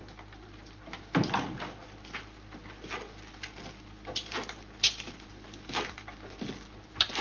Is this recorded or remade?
recorded